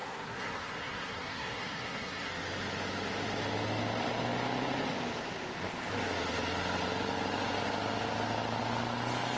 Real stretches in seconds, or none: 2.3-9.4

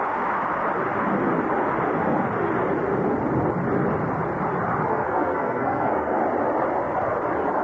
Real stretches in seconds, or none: 0.0-4.9; 6.2-7.6

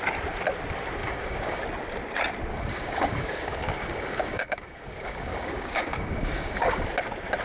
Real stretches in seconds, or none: 0.0-1.0; 1.6-2.5; 6.9-7.4

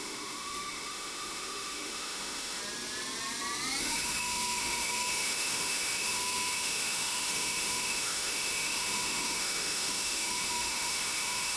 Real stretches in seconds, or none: 2.6-3.8